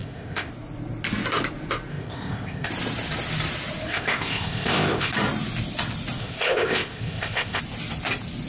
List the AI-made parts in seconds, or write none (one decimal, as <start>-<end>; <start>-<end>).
0.0-0.5; 1.9-2.7; 3.9-5.1; 6.2-7.6